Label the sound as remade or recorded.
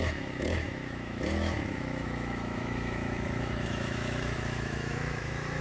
remade